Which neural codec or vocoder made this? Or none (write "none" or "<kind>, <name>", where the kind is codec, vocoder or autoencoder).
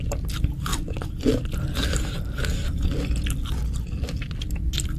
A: none